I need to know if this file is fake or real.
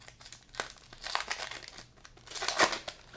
real